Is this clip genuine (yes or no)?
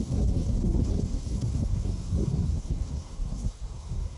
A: no